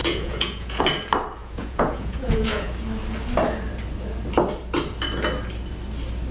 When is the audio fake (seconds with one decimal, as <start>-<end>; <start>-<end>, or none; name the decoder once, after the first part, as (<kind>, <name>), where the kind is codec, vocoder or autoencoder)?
0.0-0.8 (vocoder, Vocos); 1.4-2.7

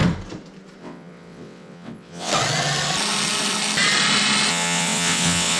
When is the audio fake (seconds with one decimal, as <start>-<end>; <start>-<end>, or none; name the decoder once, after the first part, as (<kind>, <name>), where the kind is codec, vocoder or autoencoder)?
0.8-2.3 (vocoder, WaveNeXt); 4.5-5.6

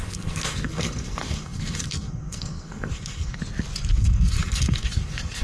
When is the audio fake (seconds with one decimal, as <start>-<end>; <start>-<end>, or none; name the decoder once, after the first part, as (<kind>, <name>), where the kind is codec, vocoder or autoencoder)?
0.0-3.4 (codec, SNAC); 3.9-5.4

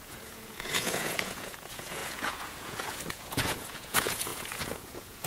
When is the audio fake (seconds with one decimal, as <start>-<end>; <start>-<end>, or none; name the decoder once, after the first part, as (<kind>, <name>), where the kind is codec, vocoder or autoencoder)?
0.0-5.3 (vocoder, Vocos)